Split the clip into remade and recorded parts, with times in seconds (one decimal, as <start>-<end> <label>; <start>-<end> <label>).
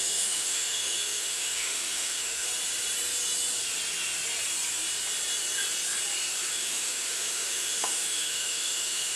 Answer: 0.0-2.5 remade; 2.5-6.5 recorded; 6.5-9.2 remade